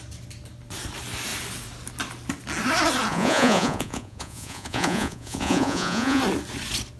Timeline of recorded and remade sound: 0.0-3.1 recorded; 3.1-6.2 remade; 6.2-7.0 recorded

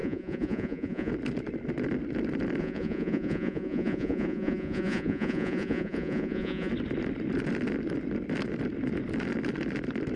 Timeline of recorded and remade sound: 0.0-1.1 remade; 1.1-2.6 recorded; 2.6-6.7 remade; 6.7-10.2 recorded

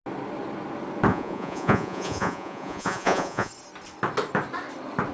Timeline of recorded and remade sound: 0.0-1.1 recorded; 1.1-3.5 remade; 3.5-5.1 recorded

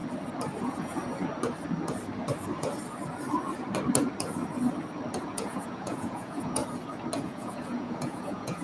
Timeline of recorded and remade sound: 0.0-0.6 recorded; 0.6-1.0 remade; 1.0-5.2 recorded; 5.2-6.6 remade; 6.6-7.2 recorded; 7.2-8.6 remade

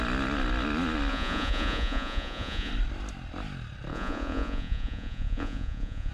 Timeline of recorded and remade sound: 0.0-1.1 recorded; 1.1-2.7 remade; 2.7-3.9 recorded; 3.9-6.1 remade